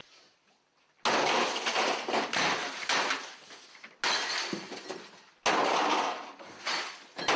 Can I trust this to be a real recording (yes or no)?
yes